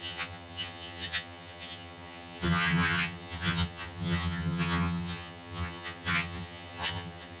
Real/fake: fake